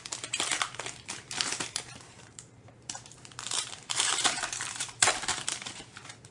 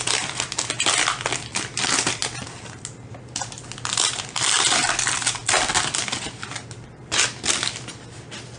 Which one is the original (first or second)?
second